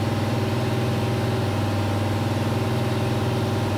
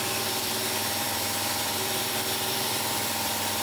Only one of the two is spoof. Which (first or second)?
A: second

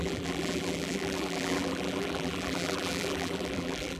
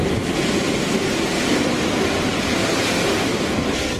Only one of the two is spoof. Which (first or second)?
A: first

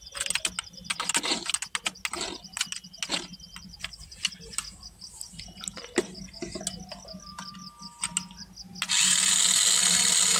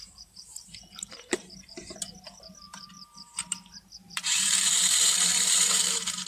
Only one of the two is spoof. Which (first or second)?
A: second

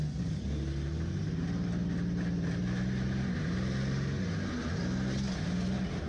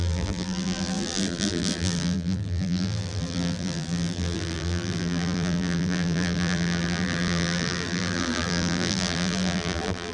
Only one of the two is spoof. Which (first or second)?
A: second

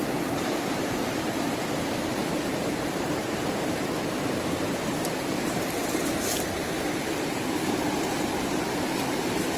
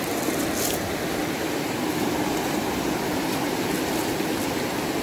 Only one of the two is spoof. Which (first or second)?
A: first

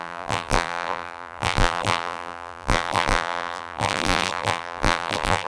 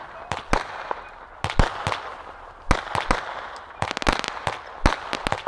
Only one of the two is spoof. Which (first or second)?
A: first